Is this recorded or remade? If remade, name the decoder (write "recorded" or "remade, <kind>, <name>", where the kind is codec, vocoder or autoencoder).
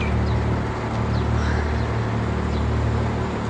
recorded